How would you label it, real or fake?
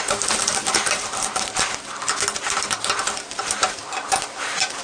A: real